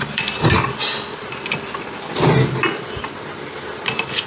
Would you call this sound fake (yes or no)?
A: no